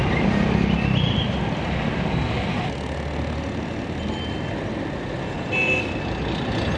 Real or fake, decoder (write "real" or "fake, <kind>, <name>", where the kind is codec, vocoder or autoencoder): real